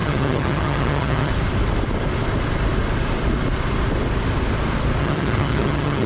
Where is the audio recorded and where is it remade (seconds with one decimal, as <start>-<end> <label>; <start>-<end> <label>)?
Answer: 0.0-1.3 remade; 1.3-5.0 recorded; 5.0-6.1 remade